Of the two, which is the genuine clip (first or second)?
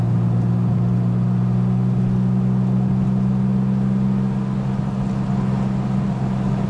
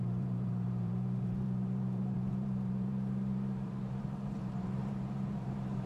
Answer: first